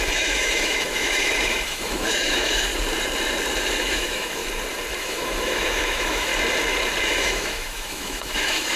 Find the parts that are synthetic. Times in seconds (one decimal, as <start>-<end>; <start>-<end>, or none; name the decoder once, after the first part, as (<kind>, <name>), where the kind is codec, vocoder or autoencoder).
0.0-2.7 (autoencoder, DAC-VAE); 3.8-4.4; 5.0-6.3; 7.0-8.8